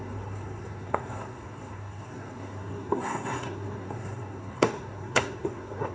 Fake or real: fake